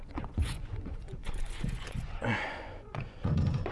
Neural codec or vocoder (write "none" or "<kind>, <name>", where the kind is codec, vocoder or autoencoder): vocoder, Vocos